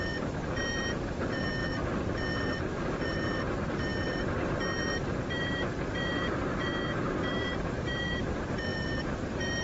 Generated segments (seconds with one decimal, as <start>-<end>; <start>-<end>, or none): 0.0-9.6